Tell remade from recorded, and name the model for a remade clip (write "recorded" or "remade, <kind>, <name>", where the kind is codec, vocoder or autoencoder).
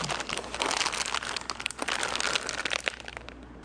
recorded